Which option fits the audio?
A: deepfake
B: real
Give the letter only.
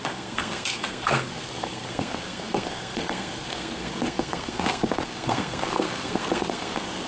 A